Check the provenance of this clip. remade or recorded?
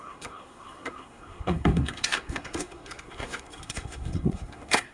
remade